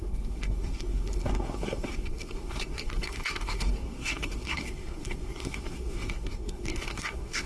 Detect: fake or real fake